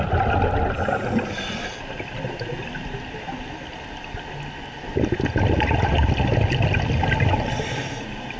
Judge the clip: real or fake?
real